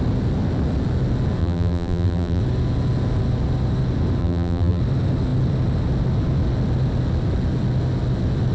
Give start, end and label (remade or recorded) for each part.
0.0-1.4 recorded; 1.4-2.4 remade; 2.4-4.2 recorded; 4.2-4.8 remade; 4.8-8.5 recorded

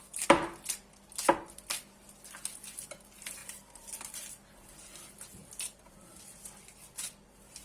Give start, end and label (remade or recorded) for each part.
0.0-7.6 recorded

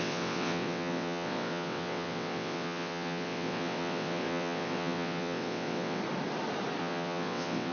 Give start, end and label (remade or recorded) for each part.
0.0-6.0 remade; 6.0-6.8 recorded; 6.8-7.7 remade

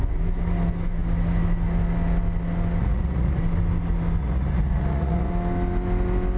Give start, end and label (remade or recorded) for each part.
0.0-2.8 recorded; 2.8-3.4 remade; 3.4-4.2 recorded; 4.2-5.3 remade; 5.3-6.4 recorded

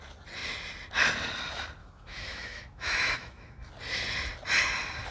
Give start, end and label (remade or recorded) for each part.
0.0-1.8 recorded; 1.8-3.7 remade; 3.7-5.1 recorded